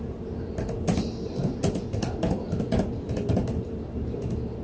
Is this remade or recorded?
recorded